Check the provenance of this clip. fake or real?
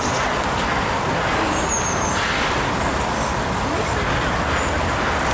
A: real